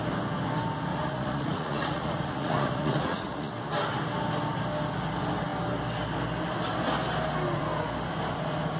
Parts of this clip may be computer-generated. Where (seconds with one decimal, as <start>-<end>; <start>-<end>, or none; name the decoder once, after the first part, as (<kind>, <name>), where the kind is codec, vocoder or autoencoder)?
0.9-3.5 (vocoder, Vocos)